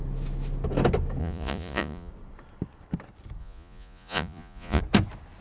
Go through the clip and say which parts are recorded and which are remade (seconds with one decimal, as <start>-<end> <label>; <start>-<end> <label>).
0.0-1.2 recorded; 1.2-2.1 remade; 2.1-3.4 recorded; 3.4-4.8 remade; 4.8-5.4 recorded